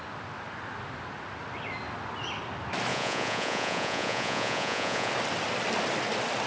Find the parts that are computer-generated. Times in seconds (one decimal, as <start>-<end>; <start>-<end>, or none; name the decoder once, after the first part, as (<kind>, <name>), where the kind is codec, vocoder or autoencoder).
2.9-5.1 (vocoder, Vocos)